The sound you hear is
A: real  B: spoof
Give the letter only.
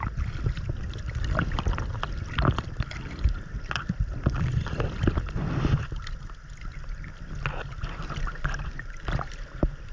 A